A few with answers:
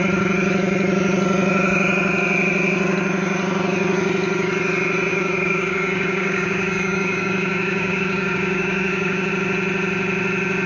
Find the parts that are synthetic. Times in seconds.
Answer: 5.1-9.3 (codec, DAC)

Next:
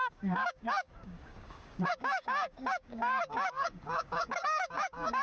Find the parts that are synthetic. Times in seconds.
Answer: 0.0-5.2 (codec, DAC)

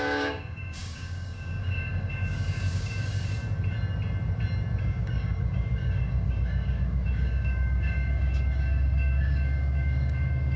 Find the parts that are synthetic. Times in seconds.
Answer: 0.0-3.4 (codec, DAC); 4.8-10.6

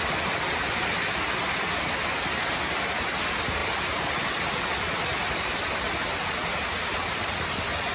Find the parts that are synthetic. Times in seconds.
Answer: none

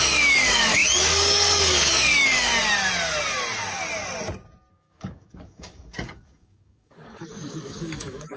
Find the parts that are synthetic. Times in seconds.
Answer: 0.0-2.5 (codec, DAC); 4.7-8.4

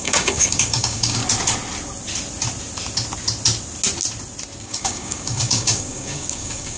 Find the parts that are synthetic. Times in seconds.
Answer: 0.0-1.2 (codec, DAC); 4.6-6.8

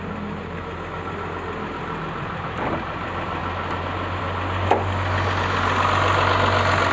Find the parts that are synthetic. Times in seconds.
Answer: none